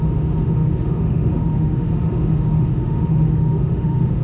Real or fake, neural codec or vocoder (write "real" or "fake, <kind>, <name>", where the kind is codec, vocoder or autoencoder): fake, autoencoder, DAC-VAE